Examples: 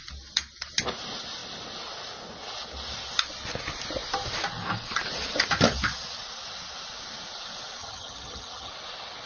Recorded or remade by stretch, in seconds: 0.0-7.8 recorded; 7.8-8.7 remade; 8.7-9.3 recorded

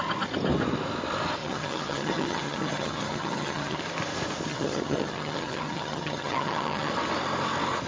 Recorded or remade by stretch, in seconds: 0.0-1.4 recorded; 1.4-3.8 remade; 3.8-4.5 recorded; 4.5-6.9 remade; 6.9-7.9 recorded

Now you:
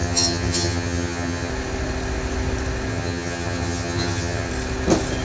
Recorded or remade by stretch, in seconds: 0.0-1.5 remade; 1.5-2.9 recorded; 2.9-4.5 remade; 4.5-5.2 recorded

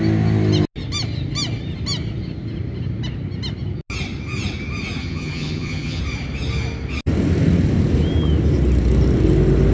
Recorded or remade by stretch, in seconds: 0.0-5.0 recorded; 5.0-6.0 remade; 6.0-9.7 recorded